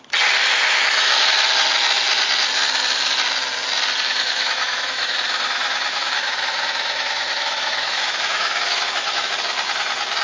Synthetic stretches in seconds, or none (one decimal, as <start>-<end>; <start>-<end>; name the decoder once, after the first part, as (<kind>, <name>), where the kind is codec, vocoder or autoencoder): 4.1-9.3 (autoencoder, DAC-VAE)